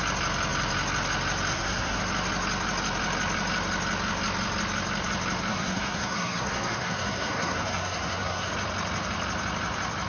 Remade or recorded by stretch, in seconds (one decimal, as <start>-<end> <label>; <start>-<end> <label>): 0.0-1.5 recorded; 1.5-2.0 remade; 2.0-5.5 recorded; 5.5-8.5 remade; 8.5-10.1 recorded